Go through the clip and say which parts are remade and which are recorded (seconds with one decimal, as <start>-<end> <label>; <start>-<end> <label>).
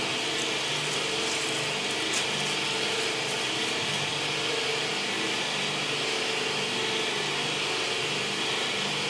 0.0-9.1 recorded